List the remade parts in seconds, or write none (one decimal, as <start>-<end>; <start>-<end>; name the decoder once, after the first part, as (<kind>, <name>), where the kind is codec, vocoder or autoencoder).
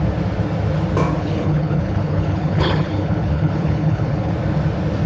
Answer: 1.2-4.3 (codec, HILCodec)